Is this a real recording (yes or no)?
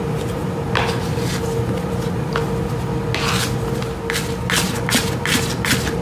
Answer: yes